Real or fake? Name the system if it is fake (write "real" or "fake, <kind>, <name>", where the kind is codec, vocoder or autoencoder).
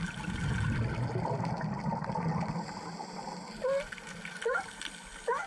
real